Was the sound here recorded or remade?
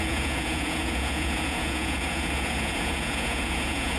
remade